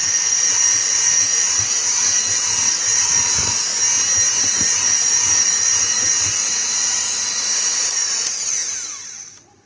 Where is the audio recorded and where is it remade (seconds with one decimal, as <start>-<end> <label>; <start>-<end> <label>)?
0.0-3.7 remade; 3.7-4.4 recorded; 4.4-8.6 remade; 8.6-9.2 recorded; 9.2-9.7 remade